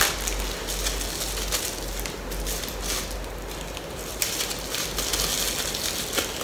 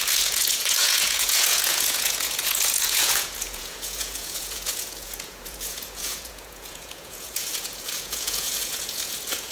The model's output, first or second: second